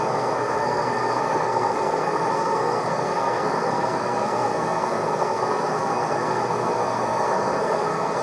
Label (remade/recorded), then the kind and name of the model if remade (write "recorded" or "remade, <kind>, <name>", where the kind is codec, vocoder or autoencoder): remade, codec, SNAC